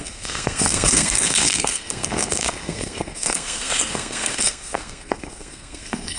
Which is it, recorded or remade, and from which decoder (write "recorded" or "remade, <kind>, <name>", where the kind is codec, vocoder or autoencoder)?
remade, codec, SNAC